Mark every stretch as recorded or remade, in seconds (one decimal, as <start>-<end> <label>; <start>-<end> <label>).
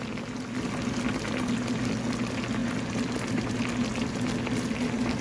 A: 0.0-2.6 recorded; 2.6-3.5 remade; 3.5-3.9 recorded; 3.9-4.7 remade; 4.7-5.2 recorded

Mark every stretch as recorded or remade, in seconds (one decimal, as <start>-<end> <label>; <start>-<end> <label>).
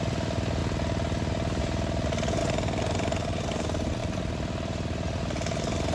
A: 0.0-4.0 recorded; 4.0-5.2 remade; 5.2-5.9 recorded